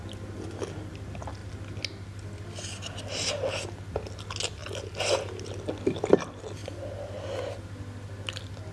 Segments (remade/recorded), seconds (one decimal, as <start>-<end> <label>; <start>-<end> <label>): 0.0-8.7 recorded